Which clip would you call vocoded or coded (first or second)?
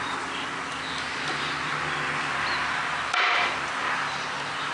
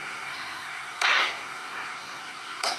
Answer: second